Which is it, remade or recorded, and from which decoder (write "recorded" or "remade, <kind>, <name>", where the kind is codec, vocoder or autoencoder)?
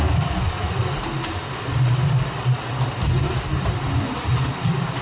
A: recorded